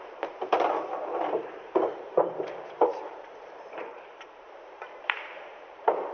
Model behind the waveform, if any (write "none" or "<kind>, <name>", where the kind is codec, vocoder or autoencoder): vocoder, BigVGAN v2